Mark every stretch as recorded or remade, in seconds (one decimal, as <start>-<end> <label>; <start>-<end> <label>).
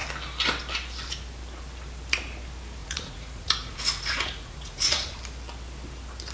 0.0-2.8 recorded; 2.8-5.2 remade; 5.2-6.3 recorded